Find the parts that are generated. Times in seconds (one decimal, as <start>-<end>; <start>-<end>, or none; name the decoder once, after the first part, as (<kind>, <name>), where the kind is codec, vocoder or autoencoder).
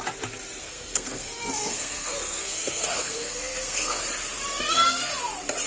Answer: 0.6-4.0 (codec, SNAC); 4.5-5.1